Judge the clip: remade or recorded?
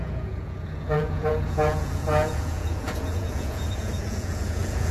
remade